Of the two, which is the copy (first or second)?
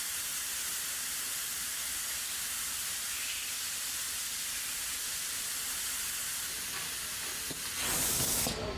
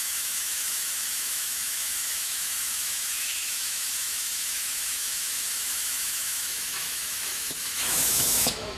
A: second